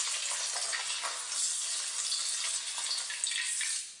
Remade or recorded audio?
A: recorded